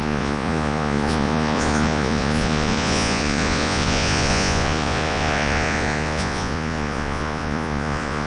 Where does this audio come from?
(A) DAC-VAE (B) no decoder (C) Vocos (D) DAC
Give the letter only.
C